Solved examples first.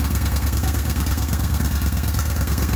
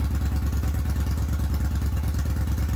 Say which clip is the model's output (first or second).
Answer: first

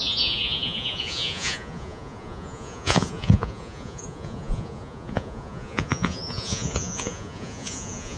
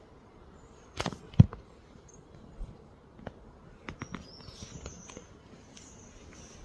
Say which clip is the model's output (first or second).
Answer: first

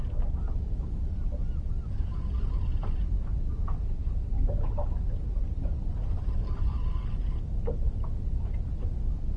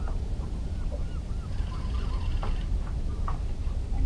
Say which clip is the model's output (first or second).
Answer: second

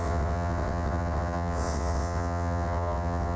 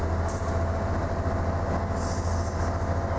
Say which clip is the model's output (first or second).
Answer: first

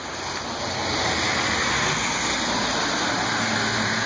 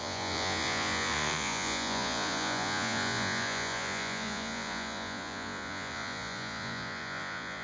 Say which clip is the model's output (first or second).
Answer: second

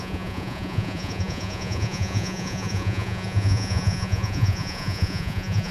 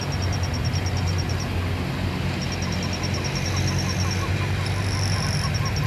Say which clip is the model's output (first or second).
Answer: first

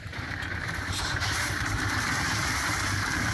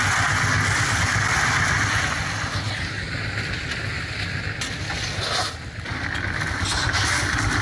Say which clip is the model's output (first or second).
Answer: first